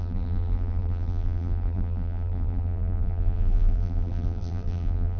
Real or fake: fake